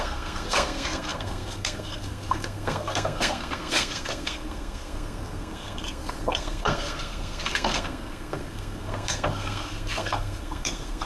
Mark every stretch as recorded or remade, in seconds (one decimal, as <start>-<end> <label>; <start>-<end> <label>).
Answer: 0.0-11.1 remade